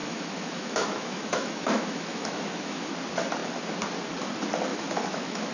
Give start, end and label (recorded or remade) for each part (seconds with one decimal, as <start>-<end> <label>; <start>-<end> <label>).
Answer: 0.0-2.9 remade; 2.9-4.7 recorded; 4.7-5.5 remade